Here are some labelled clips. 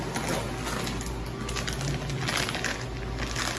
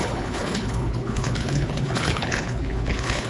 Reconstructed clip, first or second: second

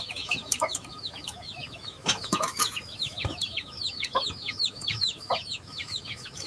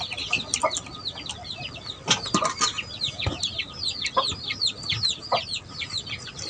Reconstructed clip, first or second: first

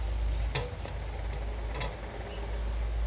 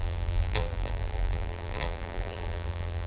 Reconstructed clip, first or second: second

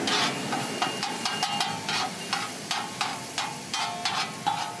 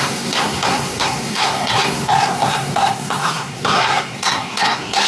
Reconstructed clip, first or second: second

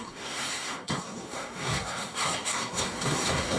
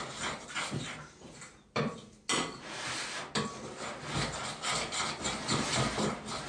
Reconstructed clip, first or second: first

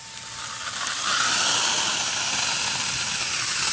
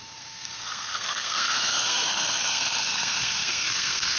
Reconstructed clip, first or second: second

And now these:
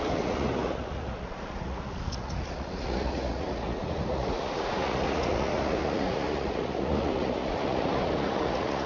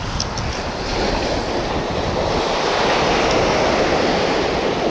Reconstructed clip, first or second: first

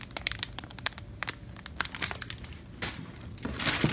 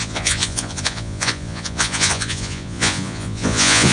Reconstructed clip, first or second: second